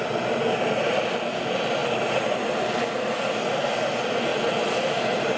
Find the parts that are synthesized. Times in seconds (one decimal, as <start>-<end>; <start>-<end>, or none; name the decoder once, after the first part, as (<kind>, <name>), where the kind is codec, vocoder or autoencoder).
none